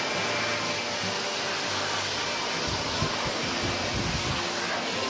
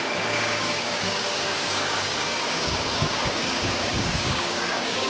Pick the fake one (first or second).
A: second